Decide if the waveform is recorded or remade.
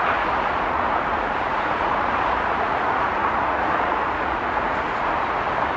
remade